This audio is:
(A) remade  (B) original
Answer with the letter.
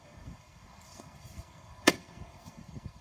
A